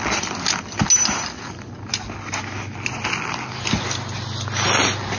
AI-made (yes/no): no